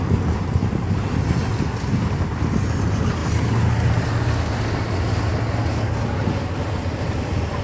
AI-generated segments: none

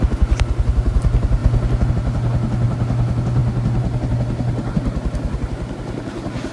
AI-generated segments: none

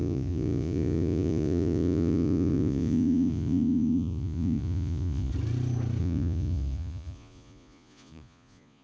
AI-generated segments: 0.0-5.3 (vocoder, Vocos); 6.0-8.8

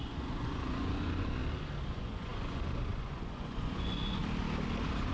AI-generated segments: 0.0-1.4 (vocoder, Vocos); 1.9-4.2

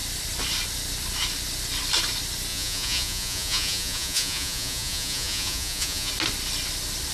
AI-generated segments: 2.5-6.1 (vocoder, Vocos)